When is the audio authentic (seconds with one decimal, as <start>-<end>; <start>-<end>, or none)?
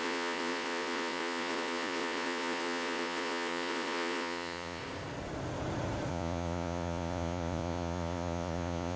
4.8-6.1